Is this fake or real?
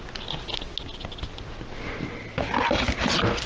real